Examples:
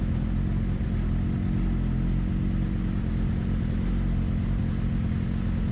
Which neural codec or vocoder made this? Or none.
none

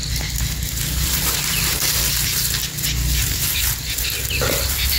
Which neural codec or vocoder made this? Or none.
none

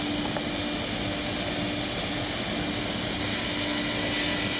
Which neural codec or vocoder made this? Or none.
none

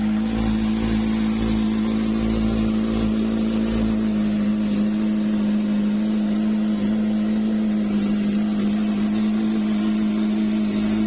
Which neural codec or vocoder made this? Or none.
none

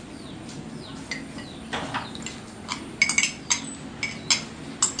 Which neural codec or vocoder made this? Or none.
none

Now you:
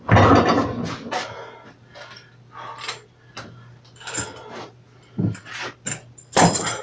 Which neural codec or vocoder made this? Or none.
none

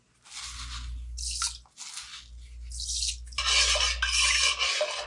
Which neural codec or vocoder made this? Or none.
none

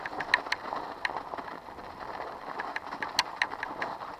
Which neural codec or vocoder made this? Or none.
none